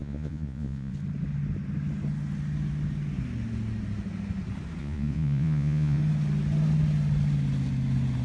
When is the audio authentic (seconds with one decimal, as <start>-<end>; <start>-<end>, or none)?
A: 0.9-4.8; 6.0-8.2